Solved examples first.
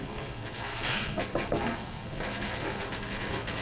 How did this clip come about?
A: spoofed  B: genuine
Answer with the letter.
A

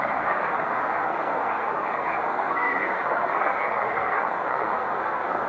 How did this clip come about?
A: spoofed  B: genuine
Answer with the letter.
A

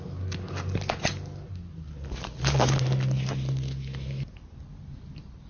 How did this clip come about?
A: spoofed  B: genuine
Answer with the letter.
B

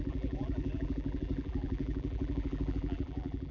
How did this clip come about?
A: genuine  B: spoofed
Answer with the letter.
B